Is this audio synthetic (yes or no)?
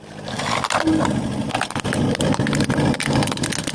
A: no